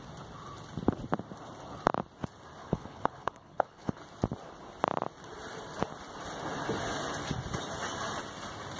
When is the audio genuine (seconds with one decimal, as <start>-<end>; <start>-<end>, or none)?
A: 0.0-2.6; 4.0-8.8